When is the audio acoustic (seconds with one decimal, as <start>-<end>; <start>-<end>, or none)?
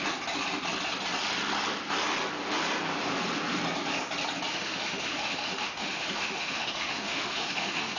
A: 0.0-4.5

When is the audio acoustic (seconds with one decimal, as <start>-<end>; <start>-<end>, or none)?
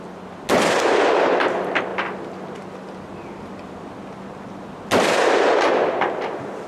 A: 0.0-6.7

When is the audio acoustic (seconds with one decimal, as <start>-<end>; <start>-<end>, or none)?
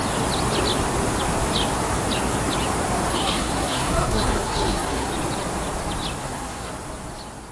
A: 0.0-3.1; 5.1-6.2; 6.7-7.5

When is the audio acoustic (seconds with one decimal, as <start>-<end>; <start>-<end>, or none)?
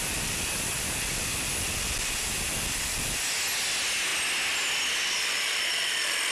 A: 0.0-6.3